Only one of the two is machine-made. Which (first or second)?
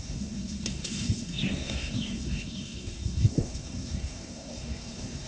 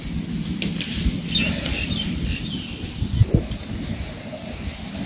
first